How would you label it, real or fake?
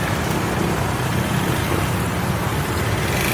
real